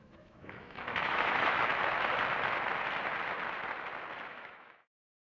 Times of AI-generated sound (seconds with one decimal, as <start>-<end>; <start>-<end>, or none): 0.0-1.7; 4.3-5.2